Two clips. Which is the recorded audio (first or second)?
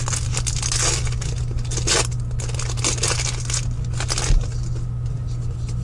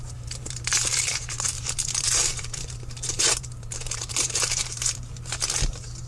first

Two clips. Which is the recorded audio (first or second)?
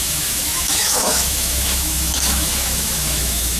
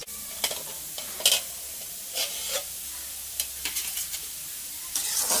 second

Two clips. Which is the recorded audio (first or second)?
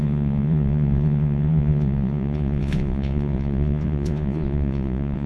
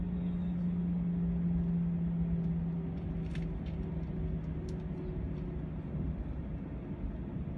second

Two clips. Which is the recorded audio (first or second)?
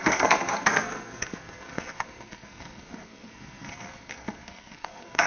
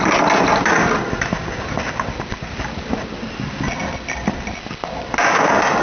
second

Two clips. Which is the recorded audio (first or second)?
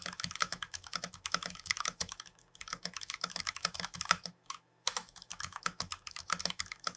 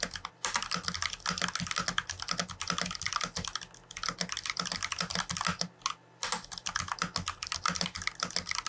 second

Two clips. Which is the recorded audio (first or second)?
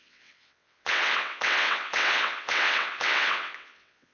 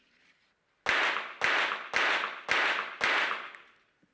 second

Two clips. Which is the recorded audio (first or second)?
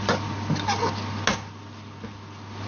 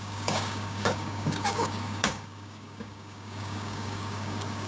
first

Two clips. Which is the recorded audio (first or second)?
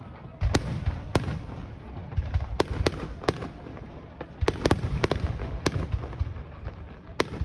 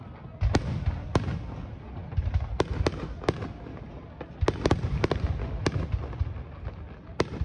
second